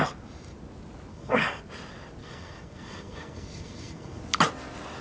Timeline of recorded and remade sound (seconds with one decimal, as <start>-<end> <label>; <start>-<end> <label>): 0.0-1.1 recorded; 1.1-1.6 remade; 1.6-2.2 recorded; 2.2-4.2 remade; 4.2-5.0 recorded